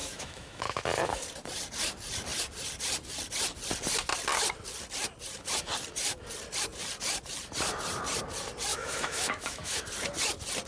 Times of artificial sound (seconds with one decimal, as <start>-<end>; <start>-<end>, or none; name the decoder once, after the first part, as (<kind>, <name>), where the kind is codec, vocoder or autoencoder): 0.0-0.8 (autoencoder, DAC-VAE); 8.7-9.8